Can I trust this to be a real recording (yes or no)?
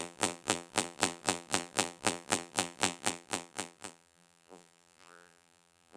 no